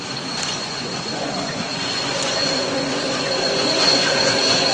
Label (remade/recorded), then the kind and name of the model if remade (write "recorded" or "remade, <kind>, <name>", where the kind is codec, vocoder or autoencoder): remade, vocoder, Vocos